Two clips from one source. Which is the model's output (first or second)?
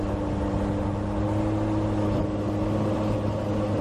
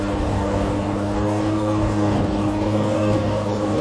second